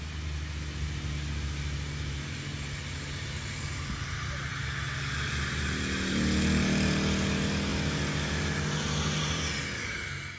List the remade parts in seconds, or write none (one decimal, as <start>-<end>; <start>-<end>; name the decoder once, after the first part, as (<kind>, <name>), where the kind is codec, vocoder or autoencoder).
none